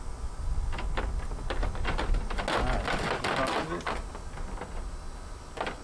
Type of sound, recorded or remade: recorded